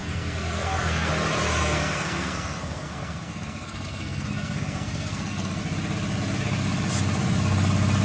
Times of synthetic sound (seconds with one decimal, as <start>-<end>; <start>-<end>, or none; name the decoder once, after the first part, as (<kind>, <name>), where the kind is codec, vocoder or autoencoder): 0.0-1.1 (codec, SNAC); 1.6-5.6